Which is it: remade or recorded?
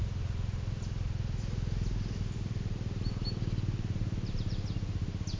recorded